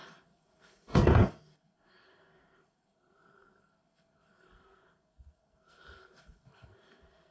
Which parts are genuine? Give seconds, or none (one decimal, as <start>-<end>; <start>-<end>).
none